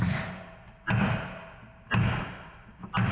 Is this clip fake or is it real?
real